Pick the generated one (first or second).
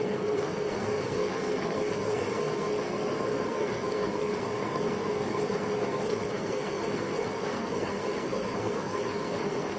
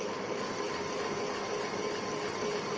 first